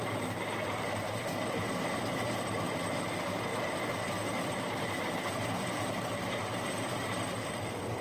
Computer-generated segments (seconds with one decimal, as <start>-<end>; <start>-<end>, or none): 0.0-1.2; 2.7-3.5; 6.6-8.0